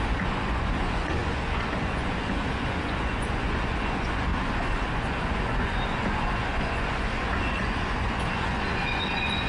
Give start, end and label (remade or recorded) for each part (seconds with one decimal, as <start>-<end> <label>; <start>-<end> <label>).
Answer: 0.0-9.5 remade